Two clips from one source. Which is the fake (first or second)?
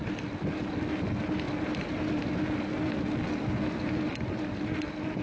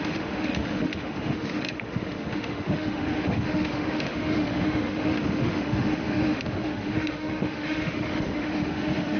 second